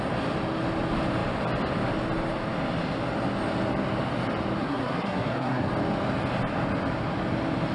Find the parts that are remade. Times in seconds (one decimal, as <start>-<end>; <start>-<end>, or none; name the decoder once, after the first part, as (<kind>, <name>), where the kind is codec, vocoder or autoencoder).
4.6-5.7 (codec, SNAC)